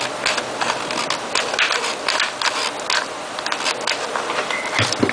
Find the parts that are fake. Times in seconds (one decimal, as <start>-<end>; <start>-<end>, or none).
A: none